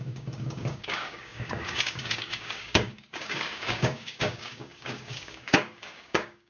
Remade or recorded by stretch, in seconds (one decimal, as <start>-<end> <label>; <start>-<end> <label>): 0.0-6.5 remade